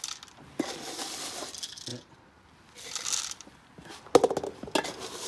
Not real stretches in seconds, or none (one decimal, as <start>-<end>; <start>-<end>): none